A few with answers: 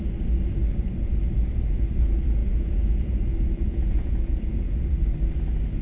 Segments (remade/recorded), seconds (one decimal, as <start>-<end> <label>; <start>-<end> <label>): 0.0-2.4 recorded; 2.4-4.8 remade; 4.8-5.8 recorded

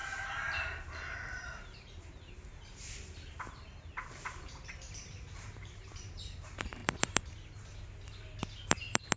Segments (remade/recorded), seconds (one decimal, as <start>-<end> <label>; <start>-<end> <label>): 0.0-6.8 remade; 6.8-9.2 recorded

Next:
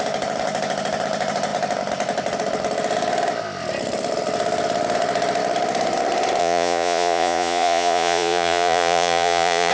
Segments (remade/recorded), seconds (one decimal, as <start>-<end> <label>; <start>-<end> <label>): 0.0-6.4 recorded; 6.4-9.7 remade